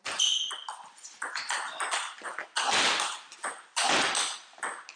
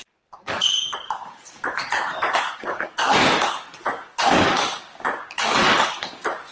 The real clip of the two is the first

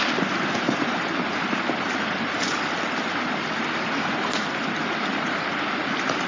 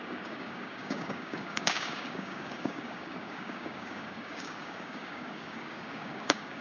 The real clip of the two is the first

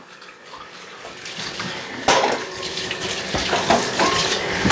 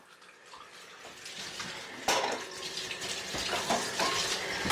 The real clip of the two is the second